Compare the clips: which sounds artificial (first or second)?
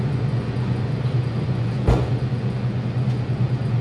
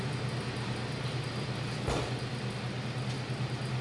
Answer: first